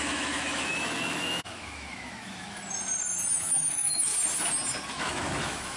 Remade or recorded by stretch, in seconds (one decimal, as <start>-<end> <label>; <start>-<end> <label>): 0.0-2.6 remade; 2.6-3.3 recorded; 3.3-4.1 remade; 4.1-4.9 recorded; 4.9-5.8 remade